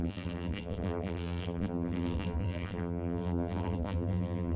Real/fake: fake